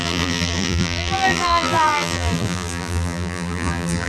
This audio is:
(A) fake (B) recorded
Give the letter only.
A